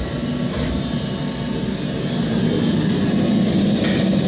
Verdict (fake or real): real